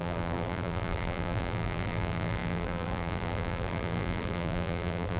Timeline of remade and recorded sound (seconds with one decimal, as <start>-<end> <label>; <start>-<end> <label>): 0.0-5.2 remade